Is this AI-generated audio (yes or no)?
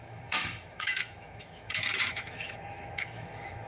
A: yes